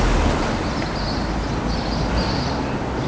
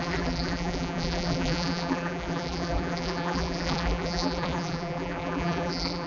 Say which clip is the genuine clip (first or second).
first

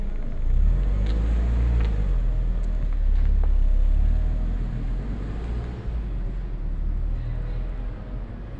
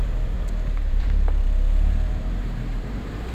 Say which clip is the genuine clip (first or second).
first